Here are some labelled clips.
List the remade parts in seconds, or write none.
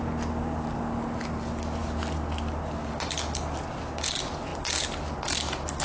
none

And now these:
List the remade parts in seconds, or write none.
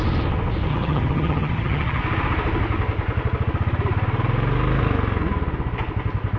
0.7-2.0 (vocoder, HiFi-GAN)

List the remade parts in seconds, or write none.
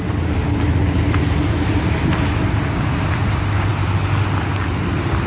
none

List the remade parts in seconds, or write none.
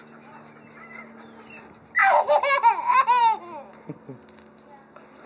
none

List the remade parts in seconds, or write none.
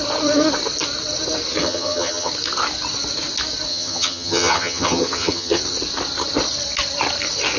1.6-2.3 (vocoder, HiFi-GAN); 3.7-5.6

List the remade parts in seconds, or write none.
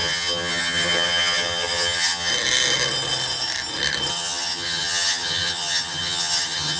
0.0-2.3 (vocoder, HiFi-GAN); 4.1-6.8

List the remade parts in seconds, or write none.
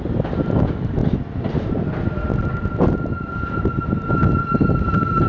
none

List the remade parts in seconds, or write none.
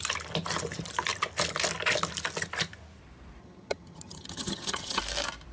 3.4-5.0 (vocoder, HiFi-GAN)